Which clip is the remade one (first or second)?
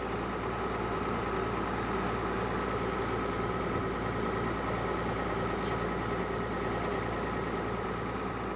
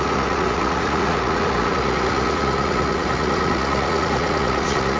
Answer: second